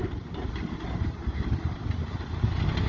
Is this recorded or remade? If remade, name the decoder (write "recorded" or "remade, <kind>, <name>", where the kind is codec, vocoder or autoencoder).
recorded